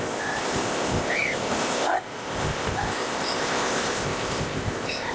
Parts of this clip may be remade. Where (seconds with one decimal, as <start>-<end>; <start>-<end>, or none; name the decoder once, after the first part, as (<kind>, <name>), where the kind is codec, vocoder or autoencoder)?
0.0-5.1 (codec, ZipCodec)